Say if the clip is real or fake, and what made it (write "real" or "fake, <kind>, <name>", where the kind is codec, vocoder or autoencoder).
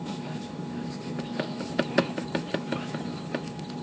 fake, autoencoder, DAC-VAE